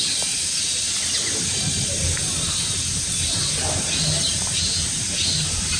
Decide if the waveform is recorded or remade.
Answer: recorded